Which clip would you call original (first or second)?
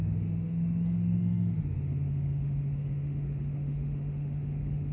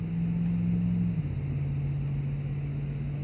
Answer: second